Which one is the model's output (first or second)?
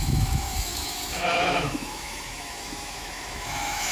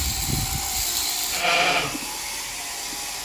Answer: first